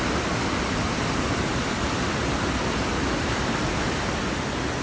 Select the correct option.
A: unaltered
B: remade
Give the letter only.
A